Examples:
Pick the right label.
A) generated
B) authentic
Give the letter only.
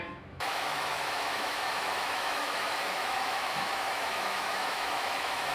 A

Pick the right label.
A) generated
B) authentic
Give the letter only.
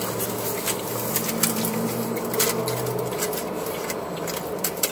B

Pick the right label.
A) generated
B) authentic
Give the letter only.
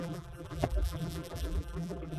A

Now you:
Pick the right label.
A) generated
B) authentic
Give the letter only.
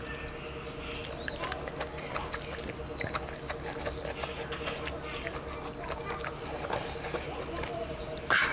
B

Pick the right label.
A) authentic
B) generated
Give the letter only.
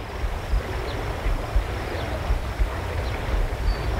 A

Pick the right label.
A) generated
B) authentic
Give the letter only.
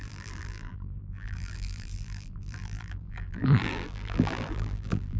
A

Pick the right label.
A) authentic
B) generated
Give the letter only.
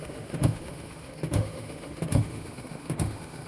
B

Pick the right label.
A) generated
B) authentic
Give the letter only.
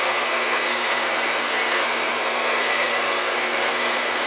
A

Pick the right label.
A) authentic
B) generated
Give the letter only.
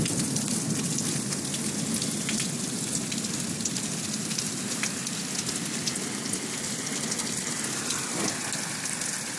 A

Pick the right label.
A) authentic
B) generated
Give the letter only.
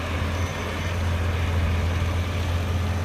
A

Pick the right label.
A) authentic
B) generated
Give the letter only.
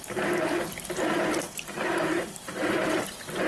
B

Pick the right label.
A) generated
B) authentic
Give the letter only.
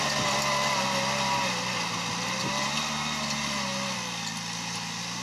B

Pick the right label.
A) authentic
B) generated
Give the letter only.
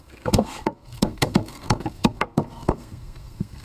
B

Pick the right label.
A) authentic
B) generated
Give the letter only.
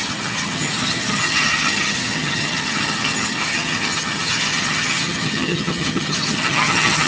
B